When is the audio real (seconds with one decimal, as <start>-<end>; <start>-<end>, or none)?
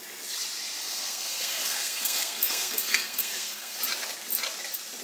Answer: 0.0-0.8; 3.8-5.0